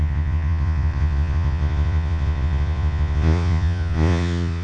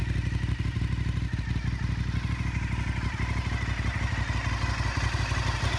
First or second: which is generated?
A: first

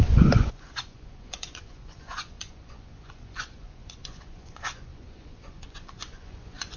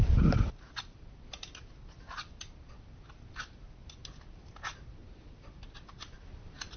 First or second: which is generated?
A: first